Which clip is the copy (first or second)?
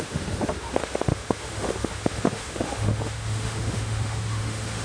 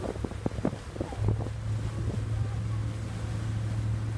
first